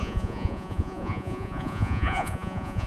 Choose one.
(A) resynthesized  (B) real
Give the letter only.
A